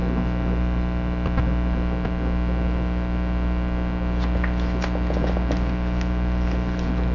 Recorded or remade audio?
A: recorded